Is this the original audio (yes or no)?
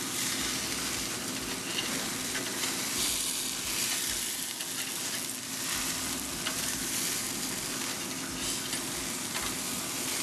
yes